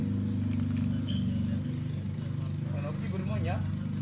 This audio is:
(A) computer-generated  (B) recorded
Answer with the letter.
B